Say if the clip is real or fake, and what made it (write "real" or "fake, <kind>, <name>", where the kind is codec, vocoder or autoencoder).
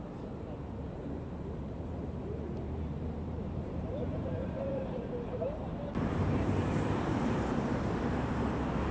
fake, vocoder, BigVGAN v2